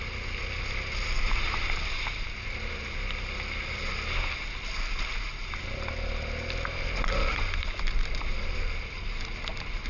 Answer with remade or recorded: recorded